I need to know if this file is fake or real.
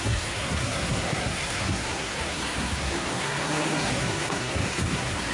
fake